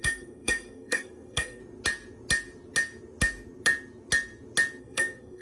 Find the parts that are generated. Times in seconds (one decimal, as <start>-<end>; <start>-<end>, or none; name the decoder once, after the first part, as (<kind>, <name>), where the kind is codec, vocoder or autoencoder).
0.0-1.6 (codec, SNAC); 4.8-5.4